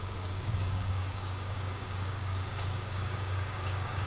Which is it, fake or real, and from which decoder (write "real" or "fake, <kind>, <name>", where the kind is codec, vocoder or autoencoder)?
fake, codec, DAC